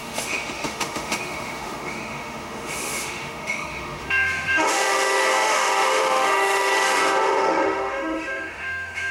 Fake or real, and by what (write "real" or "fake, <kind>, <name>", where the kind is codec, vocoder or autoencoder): fake, autoencoder, DAC-VAE